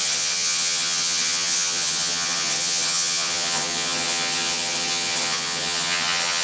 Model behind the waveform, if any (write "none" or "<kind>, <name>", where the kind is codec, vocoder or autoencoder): vocoder, HiFi-GAN